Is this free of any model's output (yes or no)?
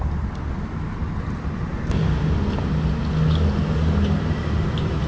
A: yes